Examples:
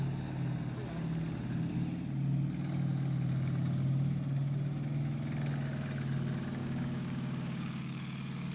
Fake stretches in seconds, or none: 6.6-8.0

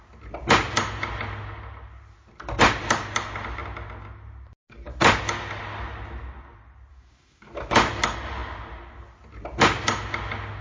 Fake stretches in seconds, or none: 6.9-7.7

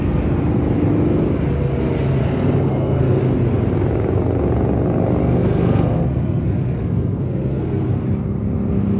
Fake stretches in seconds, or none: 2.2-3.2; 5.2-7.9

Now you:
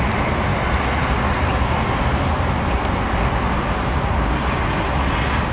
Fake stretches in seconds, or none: none

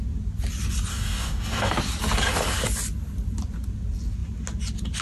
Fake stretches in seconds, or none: 0.9-1.7

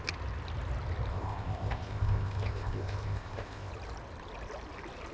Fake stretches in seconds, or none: 1.1-3.7

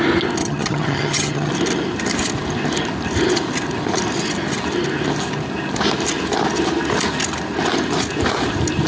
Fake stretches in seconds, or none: 0.4-1.5